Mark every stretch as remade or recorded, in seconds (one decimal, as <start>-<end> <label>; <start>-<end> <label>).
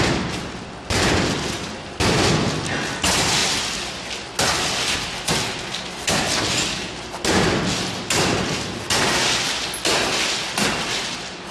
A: 0.0-11.5 recorded